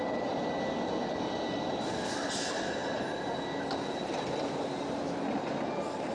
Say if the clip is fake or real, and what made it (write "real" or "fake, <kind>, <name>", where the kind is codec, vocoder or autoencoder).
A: real